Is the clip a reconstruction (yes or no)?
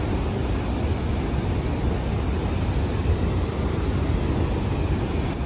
no